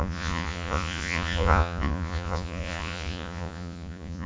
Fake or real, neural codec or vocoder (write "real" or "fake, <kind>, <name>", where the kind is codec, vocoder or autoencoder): fake, vocoder, Vocos